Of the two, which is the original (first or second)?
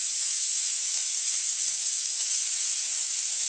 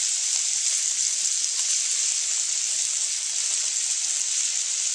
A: second